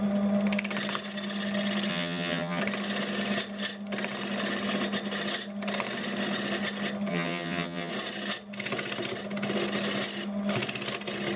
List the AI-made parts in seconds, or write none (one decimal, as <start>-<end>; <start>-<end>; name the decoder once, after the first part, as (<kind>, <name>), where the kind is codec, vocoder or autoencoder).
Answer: 1.9-2.6 (vocoder, HiFi-GAN); 7.1-7.9